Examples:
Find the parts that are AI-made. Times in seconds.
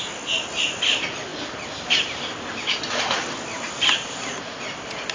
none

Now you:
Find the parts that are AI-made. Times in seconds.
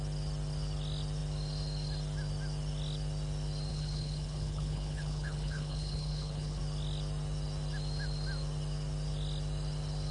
3.7-6.6 (codec, HILCodec)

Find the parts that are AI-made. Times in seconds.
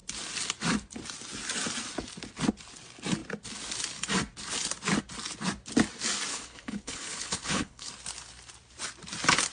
6.3-7.9 (codec, HILCodec)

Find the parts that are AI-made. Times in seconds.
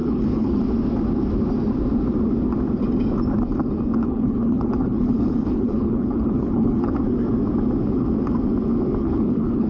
0.0-0.6 (codec, HILCodec); 4.0-6.9; 9.0-9.7